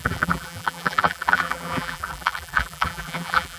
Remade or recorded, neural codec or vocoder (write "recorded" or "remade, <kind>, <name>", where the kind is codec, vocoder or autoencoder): remade, vocoder, BigVGAN v2